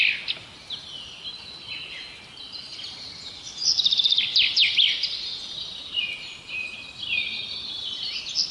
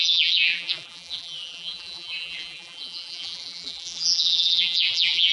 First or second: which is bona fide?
first